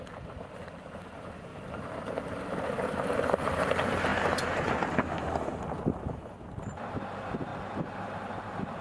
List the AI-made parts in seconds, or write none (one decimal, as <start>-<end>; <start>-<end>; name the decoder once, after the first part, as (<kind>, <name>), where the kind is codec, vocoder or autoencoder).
0.0-7.5 (vocoder, BigVGAN v2); 8.0-8.8